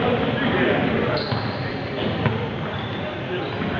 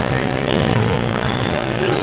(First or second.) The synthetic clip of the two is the second